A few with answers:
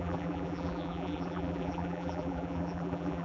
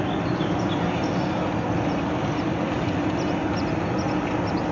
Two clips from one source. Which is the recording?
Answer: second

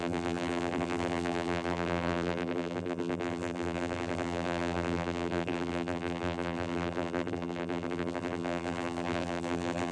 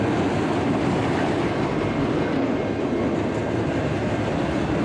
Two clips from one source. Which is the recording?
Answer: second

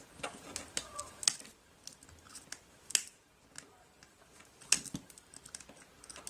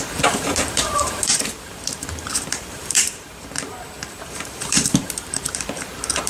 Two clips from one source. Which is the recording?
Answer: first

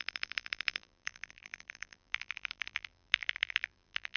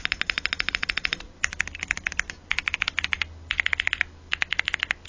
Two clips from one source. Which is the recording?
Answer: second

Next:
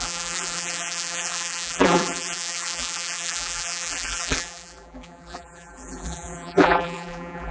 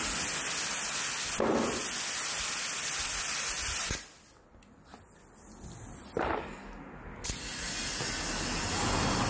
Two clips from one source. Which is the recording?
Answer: second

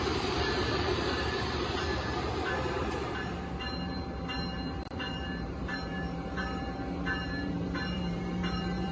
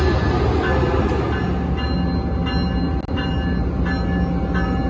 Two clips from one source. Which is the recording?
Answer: second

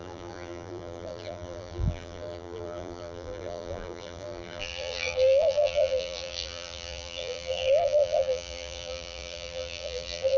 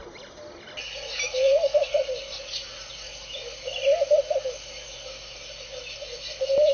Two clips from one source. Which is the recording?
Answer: second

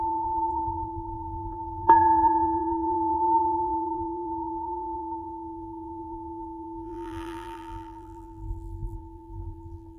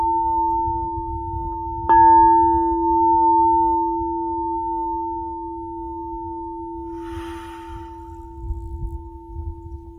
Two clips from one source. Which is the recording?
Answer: second